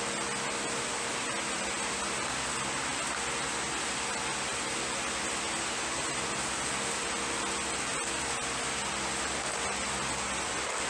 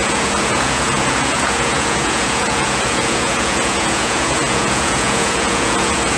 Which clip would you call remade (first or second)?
second